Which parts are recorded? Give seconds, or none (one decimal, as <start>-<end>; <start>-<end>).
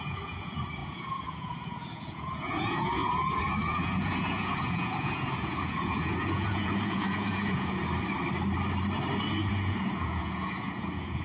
7.8-9.5